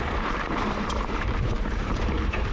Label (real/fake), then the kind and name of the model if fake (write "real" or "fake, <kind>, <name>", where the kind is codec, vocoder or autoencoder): fake, vocoder, BigVGAN v2